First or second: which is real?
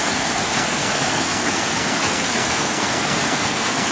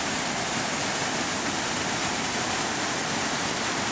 second